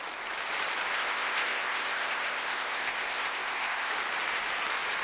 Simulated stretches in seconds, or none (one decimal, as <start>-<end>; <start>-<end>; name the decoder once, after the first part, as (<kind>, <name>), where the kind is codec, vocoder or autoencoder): 0.9-3.9 (codec, ZipCodec)